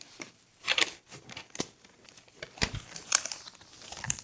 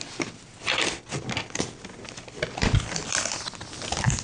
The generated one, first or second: first